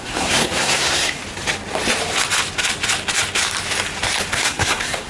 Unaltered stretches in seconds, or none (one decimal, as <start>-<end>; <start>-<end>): 1.2-4.3